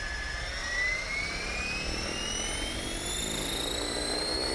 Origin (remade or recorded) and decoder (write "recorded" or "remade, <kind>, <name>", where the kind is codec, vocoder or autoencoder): recorded